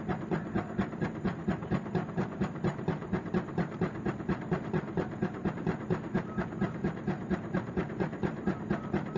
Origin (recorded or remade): remade